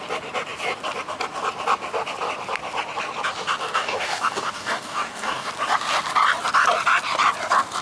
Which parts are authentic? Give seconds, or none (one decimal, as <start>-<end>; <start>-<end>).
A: 0.0-3.6; 5.5-7.8